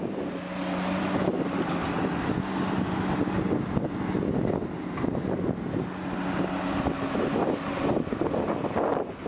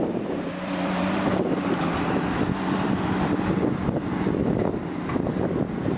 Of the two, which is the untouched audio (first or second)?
first